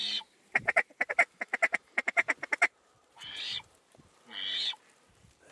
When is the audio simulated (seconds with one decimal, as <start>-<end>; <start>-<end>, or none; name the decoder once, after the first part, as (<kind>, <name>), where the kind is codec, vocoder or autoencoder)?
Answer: 0.0-1.1 (vocoder, BigVGAN v2); 1.5-4.2